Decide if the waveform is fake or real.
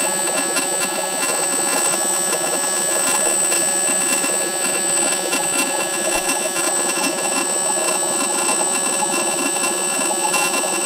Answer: fake